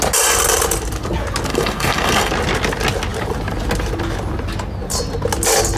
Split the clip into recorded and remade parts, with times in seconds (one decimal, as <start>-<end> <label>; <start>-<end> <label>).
0.0-1.5 recorded; 1.5-2.3 remade; 2.3-5.8 recorded

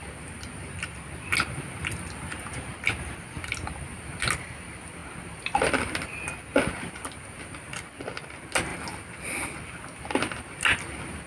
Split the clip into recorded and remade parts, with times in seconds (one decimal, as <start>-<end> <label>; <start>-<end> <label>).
0.0-11.3 recorded

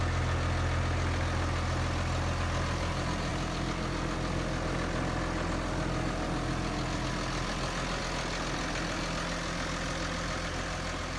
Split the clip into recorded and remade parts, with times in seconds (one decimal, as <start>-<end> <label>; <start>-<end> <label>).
0.0-11.2 recorded

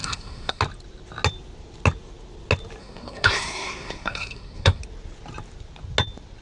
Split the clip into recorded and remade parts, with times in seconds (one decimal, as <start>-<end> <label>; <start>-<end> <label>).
0.0-0.6 remade; 0.6-2.8 recorded; 2.8-4.8 remade; 4.8-6.4 recorded